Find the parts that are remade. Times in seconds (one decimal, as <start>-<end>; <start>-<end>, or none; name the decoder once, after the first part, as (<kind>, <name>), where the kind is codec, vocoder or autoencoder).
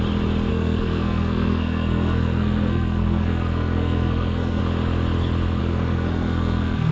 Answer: 0.5-4.6 (codec, SNAC); 5.6-6.9